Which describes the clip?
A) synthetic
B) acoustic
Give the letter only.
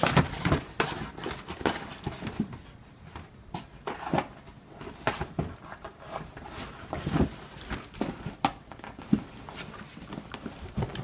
B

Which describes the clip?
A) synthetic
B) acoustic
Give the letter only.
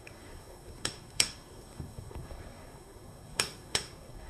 A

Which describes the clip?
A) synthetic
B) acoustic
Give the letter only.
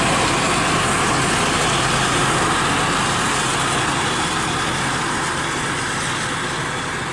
B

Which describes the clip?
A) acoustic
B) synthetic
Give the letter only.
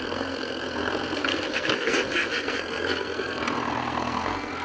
B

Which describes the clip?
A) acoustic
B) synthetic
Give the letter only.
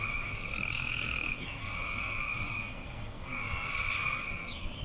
B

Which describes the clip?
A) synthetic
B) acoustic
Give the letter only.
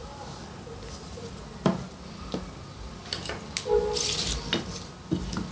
B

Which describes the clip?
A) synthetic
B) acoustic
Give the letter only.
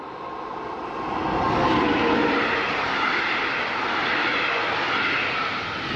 B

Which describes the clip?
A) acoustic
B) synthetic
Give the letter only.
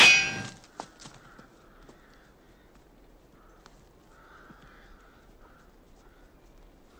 A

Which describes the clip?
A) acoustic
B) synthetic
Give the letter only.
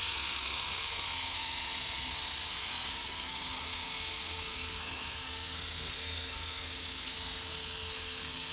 B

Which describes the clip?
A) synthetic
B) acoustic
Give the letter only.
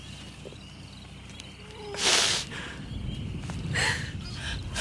B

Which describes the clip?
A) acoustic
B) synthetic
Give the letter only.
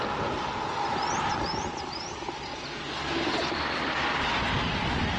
A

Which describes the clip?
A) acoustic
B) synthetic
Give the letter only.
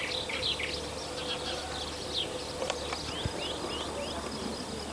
A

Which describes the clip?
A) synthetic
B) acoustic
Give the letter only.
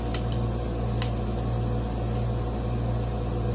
B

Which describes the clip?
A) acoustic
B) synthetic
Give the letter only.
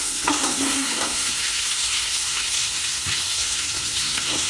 B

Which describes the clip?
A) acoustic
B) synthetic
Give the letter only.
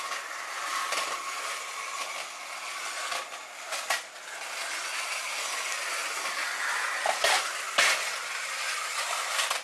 A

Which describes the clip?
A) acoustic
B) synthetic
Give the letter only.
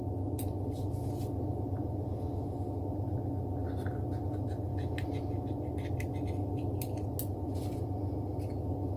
A